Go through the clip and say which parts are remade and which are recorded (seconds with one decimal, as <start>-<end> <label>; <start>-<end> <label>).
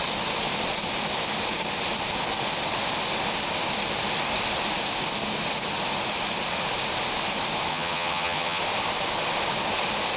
0.0-7.7 recorded; 7.7-8.6 remade; 8.6-10.2 recorded